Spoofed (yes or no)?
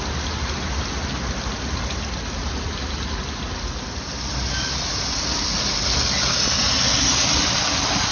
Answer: no